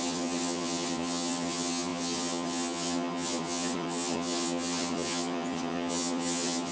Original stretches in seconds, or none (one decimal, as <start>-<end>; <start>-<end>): none